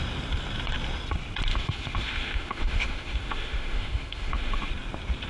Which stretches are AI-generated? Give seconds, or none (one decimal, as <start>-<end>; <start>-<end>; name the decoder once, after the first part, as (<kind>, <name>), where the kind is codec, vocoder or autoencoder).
1.5-4.7 (autoencoder, DAC-VAE)